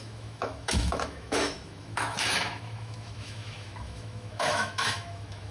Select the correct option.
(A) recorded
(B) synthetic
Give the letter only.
B